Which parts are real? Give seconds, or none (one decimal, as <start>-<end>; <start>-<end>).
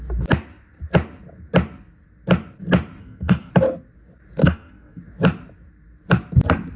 0.0-3.0; 3.5-4.4; 5.0-6.8